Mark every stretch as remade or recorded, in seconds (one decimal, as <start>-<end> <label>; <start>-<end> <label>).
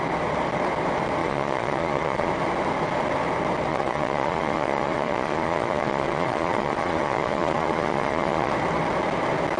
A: 0.0-1.2 recorded; 1.2-2.3 remade; 2.3-3.7 recorded; 3.7-8.5 remade; 8.5-9.6 recorded